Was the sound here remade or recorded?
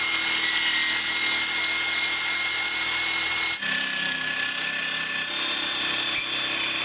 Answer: recorded